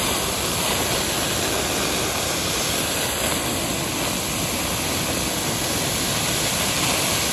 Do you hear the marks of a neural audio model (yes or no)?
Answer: no